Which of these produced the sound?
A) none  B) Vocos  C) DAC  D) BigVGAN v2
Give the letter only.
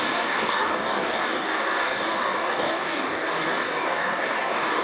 C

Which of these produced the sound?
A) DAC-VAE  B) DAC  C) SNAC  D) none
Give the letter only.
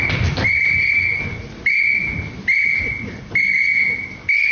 D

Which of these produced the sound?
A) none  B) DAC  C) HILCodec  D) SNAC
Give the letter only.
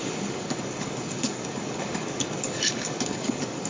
B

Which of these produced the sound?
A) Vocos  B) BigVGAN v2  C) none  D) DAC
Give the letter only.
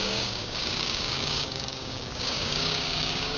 D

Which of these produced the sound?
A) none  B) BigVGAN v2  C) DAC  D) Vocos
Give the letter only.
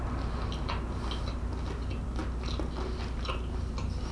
A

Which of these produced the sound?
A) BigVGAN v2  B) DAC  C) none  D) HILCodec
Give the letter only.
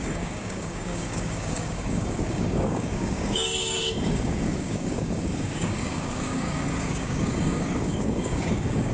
B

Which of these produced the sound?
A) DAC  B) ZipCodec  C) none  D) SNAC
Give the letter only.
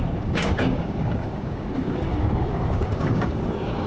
A